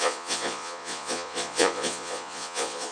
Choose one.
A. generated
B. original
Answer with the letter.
A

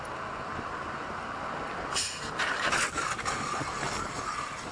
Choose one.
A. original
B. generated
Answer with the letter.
A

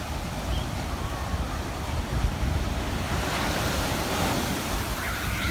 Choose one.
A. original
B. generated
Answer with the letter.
A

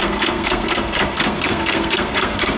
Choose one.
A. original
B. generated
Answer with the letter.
B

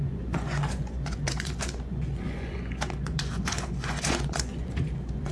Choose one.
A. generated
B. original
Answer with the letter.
A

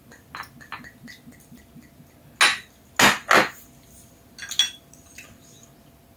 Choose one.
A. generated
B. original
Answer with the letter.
B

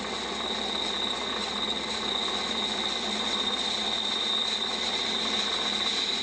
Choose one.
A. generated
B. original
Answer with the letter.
B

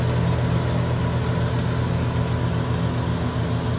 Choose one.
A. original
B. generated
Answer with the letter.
A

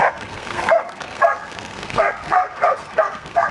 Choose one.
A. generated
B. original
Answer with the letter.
A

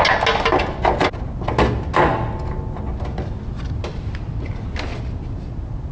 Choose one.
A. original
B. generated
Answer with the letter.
A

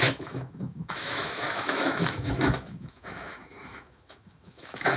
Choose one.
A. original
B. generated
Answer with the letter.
B